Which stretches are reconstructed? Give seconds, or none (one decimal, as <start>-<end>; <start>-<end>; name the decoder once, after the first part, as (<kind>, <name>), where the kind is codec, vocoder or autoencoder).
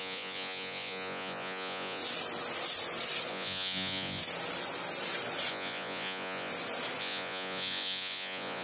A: 0.0-2.0 (vocoder, Vocos); 3.3-4.2; 5.5-6.5; 7.0-8.6